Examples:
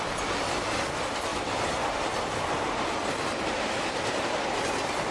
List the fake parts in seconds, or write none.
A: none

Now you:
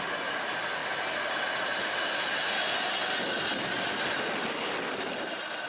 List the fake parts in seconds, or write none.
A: none

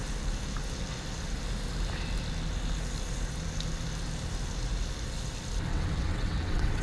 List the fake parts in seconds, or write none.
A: 5.7-6.8 (vocoder, WaveNeXt)

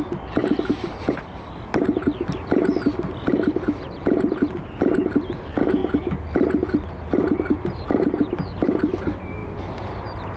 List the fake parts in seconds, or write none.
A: none

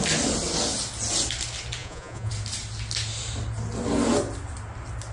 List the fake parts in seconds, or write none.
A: 1.8-2.3 (vocoder, Vocos)

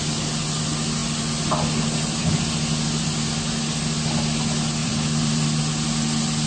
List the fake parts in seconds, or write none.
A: 4.8-5.6 (vocoder, BigVGAN v2)

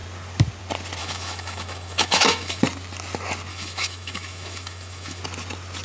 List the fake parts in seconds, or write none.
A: 1.0-2.6 (autoencoder, DAC-VAE); 3.5-5.2

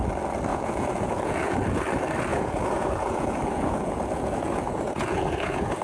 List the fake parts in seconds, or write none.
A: 0.5-1.6 (vocoder, Vocos); 2.3-5.8